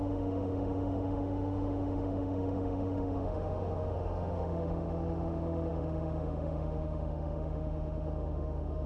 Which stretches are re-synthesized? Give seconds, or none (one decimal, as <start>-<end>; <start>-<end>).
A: 0.0-8.9